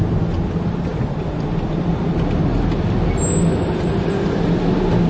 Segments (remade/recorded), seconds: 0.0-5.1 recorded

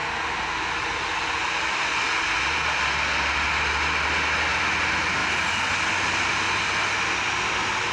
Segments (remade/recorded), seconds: 0.0-7.9 recorded

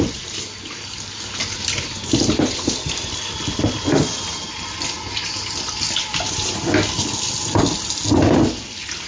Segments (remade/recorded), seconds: 0.0-9.1 recorded